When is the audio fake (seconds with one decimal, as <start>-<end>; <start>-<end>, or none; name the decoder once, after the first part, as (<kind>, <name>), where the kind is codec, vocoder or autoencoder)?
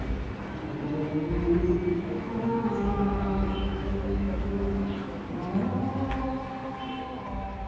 1.9-5.2 (autoencoder, DAC-VAE)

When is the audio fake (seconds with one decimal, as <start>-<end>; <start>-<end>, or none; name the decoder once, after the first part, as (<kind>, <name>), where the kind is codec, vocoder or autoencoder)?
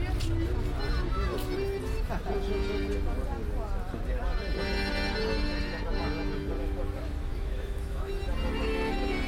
7.3-8.1 (autoencoder, DAC-VAE)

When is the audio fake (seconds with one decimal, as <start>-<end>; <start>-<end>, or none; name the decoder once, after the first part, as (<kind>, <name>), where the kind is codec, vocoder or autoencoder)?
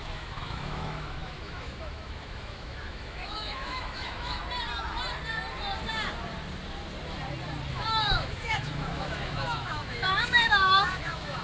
0.0-4.4 (autoencoder, DAC-VAE); 7.7-11.4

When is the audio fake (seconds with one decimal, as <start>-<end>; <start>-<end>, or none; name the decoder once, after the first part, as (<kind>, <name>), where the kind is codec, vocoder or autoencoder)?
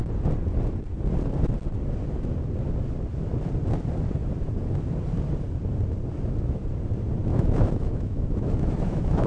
7.3-9.3 (autoencoder, DAC-VAE)